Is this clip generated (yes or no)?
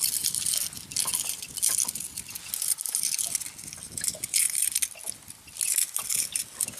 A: no